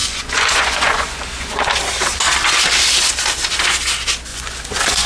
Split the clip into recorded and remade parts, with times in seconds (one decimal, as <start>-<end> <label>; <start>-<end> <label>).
0.0-1.7 remade; 1.7-4.3 recorded; 4.3-5.1 remade